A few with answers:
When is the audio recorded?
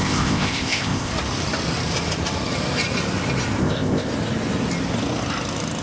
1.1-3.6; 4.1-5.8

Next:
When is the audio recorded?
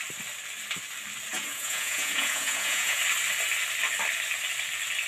0.0-1.3; 3.0-5.1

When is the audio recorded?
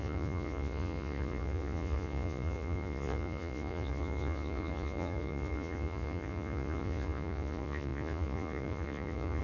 none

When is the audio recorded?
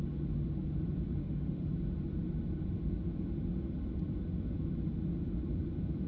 0.0-1.2; 1.7-6.1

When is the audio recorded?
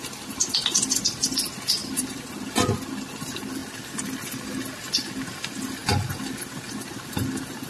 0.0-1.8; 2.3-7.7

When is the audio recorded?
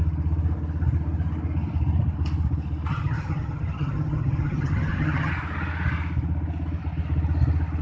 0.0-2.9; 5.3-7.8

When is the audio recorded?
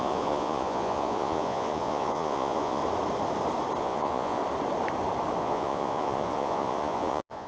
2.8-3.8; 4.4-5.4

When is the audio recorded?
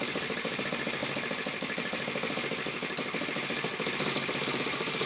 1.0-4.1